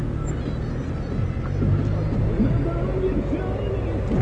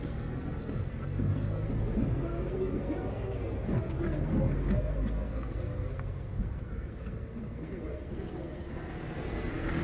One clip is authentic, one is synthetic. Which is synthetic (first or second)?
second